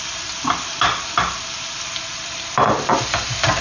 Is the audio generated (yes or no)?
no